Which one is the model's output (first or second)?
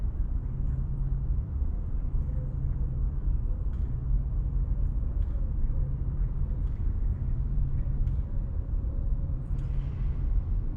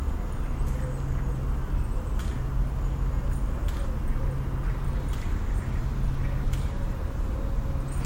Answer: first